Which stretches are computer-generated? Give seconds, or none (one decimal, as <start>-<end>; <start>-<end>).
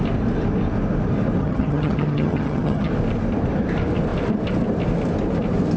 1.4-2.9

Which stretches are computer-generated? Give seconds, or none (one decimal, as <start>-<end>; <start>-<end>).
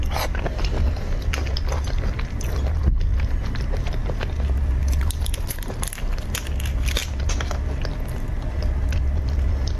3.1-4.2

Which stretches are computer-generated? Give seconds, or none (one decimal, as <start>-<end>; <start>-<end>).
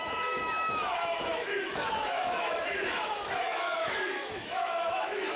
0.0-5.4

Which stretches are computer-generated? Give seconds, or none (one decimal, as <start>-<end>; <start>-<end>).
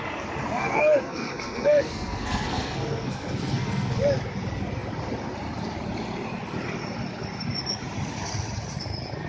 0.6-4.0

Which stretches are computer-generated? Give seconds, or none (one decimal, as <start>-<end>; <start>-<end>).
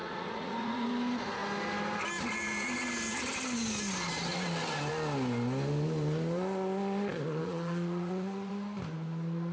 0.0-0.9; 7.4-8.5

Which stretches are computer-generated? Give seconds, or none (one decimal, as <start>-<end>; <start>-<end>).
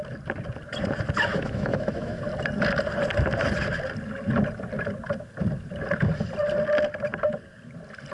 1.3-2.2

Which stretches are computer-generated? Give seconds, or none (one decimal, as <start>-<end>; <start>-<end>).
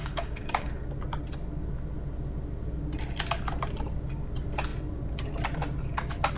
0.0-0.7